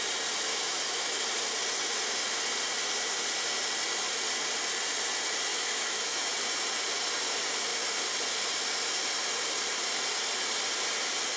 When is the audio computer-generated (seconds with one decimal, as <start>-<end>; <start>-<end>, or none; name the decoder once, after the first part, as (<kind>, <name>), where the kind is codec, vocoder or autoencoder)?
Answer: 0.5-1.2 (autoencoder, DAC-VAE); 5.5-6.3